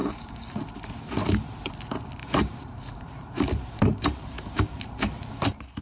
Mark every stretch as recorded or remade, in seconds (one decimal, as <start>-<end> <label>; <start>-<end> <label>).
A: 0.0-1.7 remade; 1.7-2.2 recorded; 2.2-5.8 remade